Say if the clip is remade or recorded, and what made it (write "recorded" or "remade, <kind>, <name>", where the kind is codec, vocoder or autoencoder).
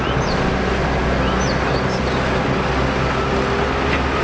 recorded